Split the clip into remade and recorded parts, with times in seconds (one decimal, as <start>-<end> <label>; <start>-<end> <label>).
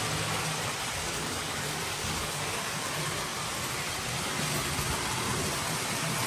0.0-1.0 recorded; 1.0-2.9 remade; 2.9-6.3 recorded